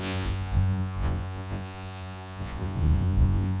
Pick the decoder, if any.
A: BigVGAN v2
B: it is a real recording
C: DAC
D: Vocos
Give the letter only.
D